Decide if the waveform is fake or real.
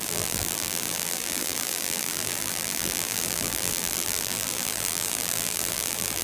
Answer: fake